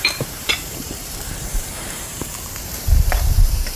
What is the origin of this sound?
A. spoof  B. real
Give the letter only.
A